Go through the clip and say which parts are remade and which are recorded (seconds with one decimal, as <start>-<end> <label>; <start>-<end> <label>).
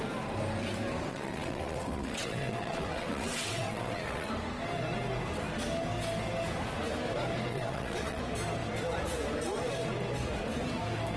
0.0-1.1 recorded; 1.1-4.3 remade; 4.3-7.5 recorded; 7.5-8.2 remade; 8.2-11.2 recorded